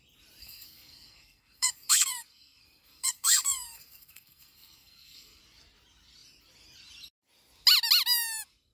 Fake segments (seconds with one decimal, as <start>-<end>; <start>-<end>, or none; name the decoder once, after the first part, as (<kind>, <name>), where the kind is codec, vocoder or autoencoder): 0.4-5.4 (codec, SNAC)